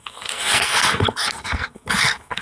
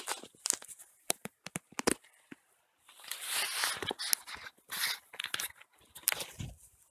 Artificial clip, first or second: first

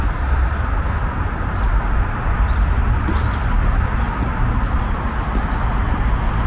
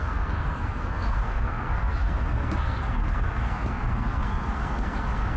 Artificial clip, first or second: second